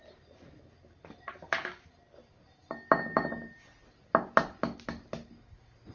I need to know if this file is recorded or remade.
recorded